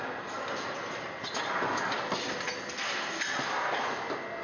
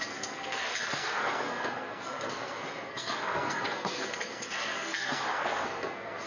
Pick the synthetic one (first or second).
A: second